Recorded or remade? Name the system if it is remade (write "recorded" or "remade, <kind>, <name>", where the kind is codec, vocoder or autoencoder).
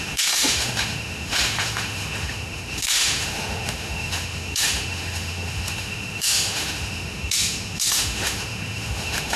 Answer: remade, autoencoder, DAC-VAE